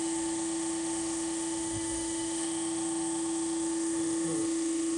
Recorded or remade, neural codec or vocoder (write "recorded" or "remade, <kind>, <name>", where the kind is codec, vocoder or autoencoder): remade, autoencoder, DAC-VAE